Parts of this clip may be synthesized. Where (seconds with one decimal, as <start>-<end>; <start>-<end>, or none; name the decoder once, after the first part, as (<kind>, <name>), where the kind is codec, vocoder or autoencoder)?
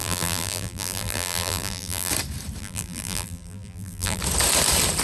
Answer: 0.0-2.1 (vocoder, BigVGAN v2); 2.6-4.2